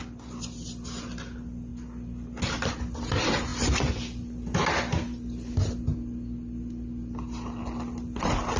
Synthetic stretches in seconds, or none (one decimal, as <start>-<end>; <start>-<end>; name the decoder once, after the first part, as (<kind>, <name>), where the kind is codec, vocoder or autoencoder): none